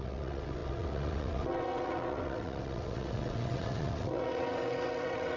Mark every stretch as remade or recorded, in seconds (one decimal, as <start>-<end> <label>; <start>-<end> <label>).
0.0-5.4 remade